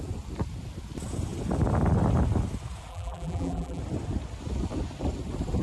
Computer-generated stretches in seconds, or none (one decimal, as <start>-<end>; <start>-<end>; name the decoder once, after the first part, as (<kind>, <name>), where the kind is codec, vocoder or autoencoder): 2.9-3.8 (vocoder, BigVGAN v2)